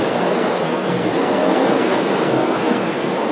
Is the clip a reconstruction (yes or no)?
yes